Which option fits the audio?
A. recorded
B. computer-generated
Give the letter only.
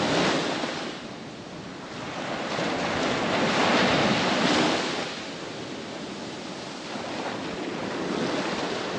A